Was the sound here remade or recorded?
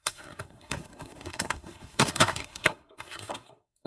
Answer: remade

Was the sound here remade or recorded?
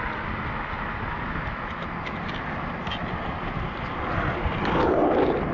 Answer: recorded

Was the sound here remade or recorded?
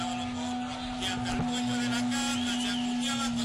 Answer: recorded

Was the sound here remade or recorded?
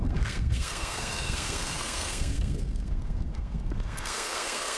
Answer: remade